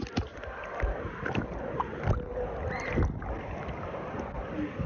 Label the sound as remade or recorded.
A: recorded